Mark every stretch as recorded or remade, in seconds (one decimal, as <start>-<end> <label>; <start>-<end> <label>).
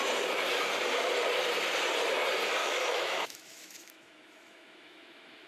0.0-2.6 recorded; 2.6-5.5 remade